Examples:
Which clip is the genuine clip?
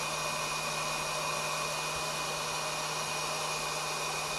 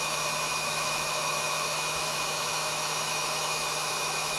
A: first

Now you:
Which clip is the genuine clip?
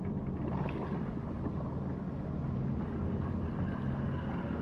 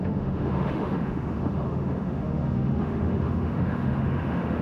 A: first